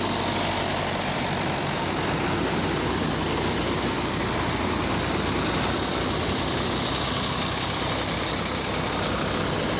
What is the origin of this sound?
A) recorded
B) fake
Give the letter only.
A